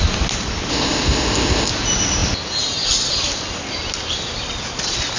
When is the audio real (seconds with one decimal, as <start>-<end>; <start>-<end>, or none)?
0.0-0.7; 1.7-5.2